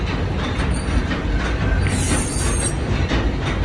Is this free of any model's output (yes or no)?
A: yes